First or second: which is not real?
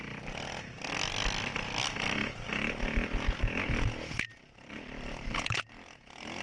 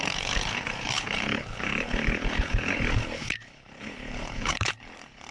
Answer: second